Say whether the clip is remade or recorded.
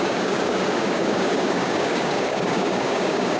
remade